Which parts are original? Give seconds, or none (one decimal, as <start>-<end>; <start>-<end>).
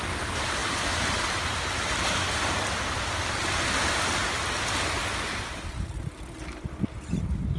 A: 0.0-7.6